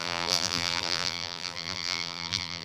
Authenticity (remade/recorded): remade